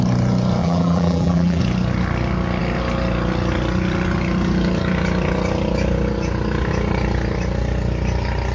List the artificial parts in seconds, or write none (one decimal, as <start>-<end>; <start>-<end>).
0.6-1.6